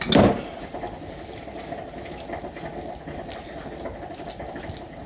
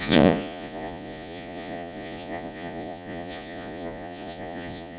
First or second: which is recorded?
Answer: first